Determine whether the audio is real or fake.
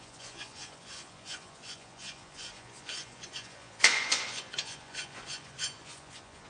fake